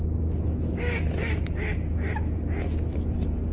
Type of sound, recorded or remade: remade